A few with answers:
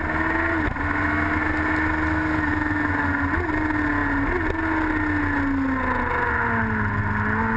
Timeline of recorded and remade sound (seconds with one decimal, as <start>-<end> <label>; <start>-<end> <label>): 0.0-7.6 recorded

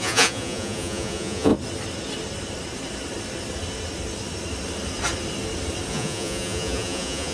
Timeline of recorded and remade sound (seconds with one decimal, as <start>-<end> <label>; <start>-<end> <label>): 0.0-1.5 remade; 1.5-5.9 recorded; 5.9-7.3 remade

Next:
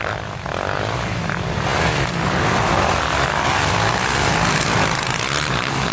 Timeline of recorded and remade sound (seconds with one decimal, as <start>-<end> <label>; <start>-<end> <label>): 0.0-5.9 recorded

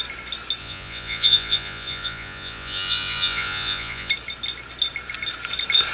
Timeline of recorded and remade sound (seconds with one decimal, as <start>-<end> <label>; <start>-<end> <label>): 0.0-0.6 recorded; 0.6-4.1 remade; 4.1-5.9 recorded

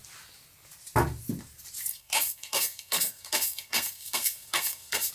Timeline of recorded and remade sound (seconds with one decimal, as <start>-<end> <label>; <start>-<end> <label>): 0.0-1.9 recorded; 1.9-5.1 remade

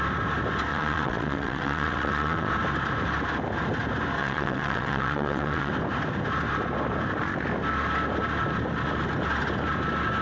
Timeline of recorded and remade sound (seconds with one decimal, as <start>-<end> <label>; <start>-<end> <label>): 0.0-0.7 recorded; 0.7-2.5 remade; 2.5-4.2 recorded; 4.2-5.7 remade; 5.7-10.2 recorded

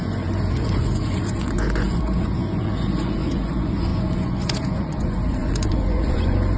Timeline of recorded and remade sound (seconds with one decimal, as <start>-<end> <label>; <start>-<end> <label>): 0.0-6.6 remade